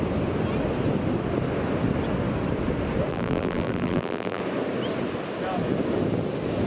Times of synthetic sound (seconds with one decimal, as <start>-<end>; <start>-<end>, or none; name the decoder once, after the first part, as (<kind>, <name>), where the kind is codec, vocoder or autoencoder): 3.1-4.4 (vocoder, BigVGAN v2)